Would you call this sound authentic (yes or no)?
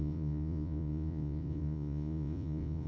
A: no